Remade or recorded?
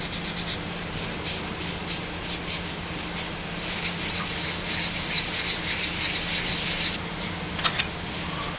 recorded